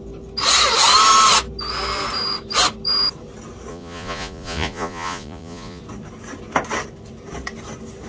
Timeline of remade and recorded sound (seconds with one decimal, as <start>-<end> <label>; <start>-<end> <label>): 0.0-3.7 recorded; 3.7-5.8 remade; 5.8-8.1 recorded